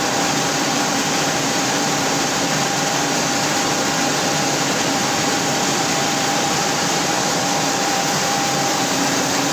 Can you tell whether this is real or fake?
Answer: fake